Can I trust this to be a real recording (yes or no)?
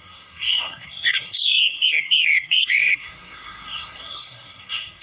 no